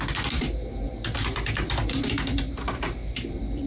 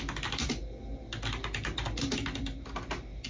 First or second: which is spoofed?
first